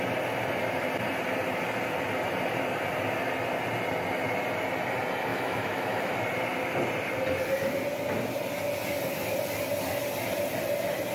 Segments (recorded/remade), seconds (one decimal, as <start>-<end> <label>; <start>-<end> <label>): 0.0-5.3 recorded; 5.3-6.1 remade; 6.1-11.1 recorded